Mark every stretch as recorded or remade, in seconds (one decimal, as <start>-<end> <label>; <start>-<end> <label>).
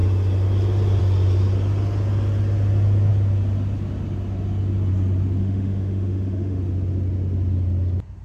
0.0-5.4 recorded; 5.4-6.6 remade; 6.6-8.2 recorded